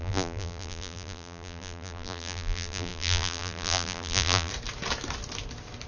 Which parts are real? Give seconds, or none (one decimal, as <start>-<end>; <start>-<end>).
4.5-5.9